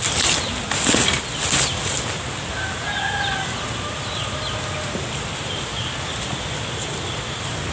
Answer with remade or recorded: recorded